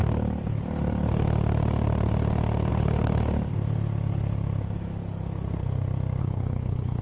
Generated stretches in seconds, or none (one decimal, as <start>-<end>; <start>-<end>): 6.2-7.0